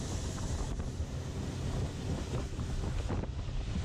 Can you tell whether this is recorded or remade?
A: recorded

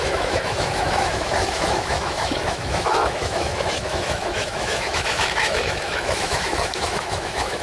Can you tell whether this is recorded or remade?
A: remade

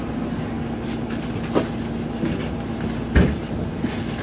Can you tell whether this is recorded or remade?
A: recorded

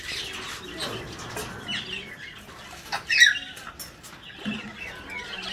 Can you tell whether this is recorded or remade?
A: recorded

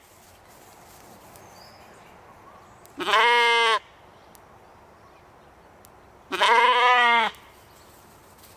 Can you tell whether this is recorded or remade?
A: recorded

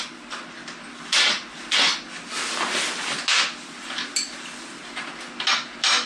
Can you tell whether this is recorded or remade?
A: recorded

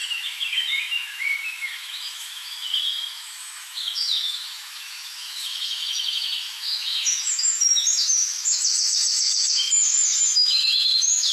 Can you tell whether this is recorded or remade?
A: remade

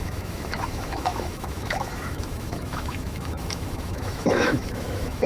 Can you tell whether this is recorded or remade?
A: remade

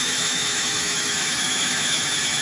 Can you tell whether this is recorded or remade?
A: remade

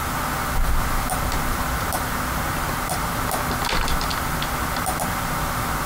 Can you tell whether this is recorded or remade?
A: recorded